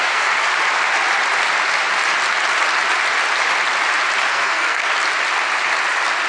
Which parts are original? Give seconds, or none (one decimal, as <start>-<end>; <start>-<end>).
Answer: 0.5-4.3; 4.9-6.3